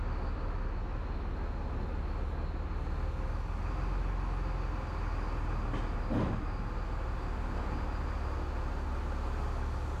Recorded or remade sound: recorded